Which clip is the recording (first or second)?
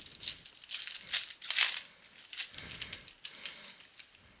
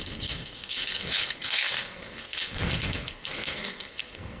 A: first